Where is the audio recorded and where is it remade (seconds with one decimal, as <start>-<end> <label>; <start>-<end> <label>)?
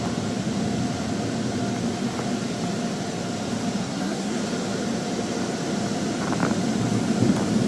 0.0-3.8 recorded; 3.8-4.4 remade; 4.4-7.7 recorded